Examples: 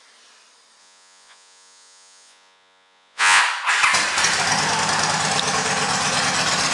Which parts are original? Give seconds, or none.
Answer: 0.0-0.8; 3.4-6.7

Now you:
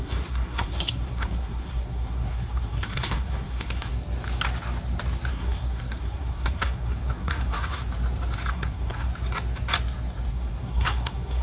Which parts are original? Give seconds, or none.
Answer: 3.9-5.3; 7.8-8.5; 9.1-10.3